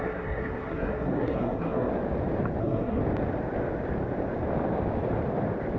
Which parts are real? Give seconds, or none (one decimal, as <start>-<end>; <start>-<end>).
1.9-2.6; 3.0-5.8